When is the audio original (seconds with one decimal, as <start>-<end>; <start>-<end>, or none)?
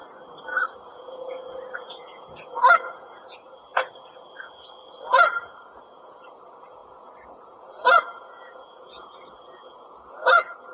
0.0-0.9